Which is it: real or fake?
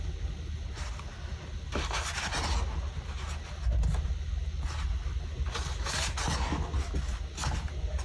real